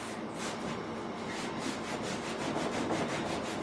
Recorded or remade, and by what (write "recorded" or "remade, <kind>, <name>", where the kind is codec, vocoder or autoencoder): recorded